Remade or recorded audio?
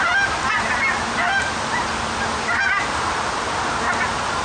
recorded